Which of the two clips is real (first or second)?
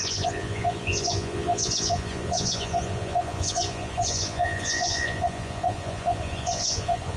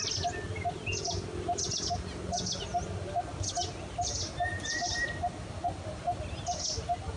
second